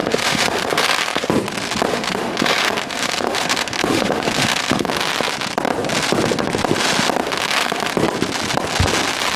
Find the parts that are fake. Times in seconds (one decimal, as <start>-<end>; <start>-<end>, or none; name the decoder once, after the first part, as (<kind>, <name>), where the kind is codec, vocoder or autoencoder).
0.0-1.3 (autoencoder, DAC-VAE); 1.9-4.9; 7.2-7.9

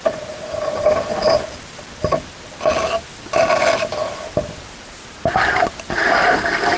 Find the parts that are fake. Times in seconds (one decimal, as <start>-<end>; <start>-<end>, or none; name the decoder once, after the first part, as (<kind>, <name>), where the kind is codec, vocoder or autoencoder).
0.0-1.1 (vocoder, BigVGAN v2); 5.1-6.8

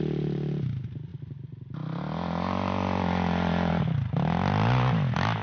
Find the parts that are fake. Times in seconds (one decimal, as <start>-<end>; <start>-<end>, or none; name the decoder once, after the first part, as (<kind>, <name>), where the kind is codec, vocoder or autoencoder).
none

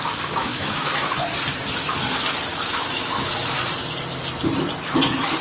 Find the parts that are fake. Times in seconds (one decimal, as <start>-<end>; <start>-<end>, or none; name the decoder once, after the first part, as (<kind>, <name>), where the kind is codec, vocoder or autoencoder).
0.4-1.3 (autoencoder, DAC-VAE); 2.5-3.3

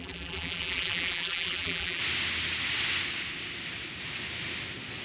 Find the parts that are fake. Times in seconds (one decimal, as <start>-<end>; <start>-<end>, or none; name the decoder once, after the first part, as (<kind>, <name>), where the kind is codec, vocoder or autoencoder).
0.0-2.0 (vocoder, BigVGAN v2)

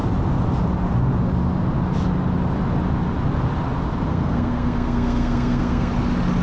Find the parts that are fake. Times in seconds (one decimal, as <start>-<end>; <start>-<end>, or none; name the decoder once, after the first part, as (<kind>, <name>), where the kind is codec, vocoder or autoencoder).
4.1-5.9 (codec, SNAC)

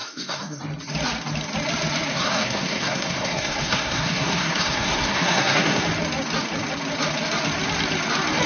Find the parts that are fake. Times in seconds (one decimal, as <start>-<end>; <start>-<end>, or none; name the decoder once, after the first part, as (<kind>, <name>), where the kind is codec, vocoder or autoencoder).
0.0-0.6 (codec, SNAC); 2.1-5.8

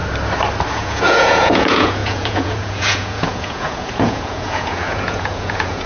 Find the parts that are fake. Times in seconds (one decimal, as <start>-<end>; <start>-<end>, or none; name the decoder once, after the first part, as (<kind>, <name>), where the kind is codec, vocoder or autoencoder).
0.7-5.9 (vocoder, Vocos)